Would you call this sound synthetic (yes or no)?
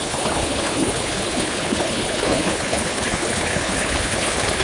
yes